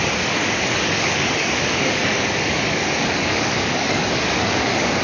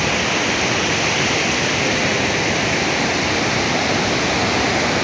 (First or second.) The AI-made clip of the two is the first